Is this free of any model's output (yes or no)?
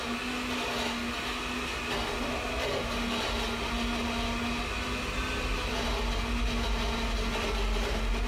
yes